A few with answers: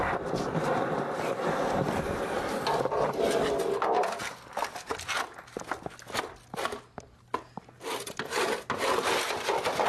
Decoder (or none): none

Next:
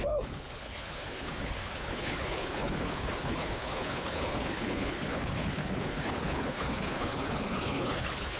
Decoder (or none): codec, HILCodec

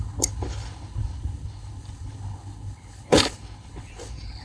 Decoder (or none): codec, HILCodec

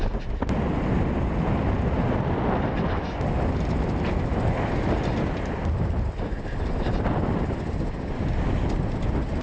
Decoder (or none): none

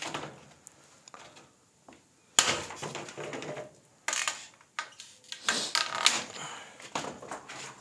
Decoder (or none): none